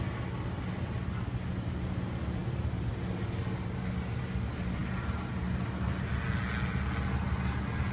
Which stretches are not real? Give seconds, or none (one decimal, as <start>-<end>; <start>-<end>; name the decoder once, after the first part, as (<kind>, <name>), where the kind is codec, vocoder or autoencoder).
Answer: none